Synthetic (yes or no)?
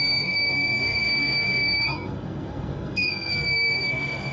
yes